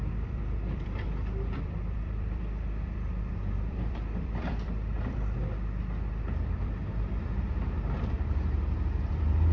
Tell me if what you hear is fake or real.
fake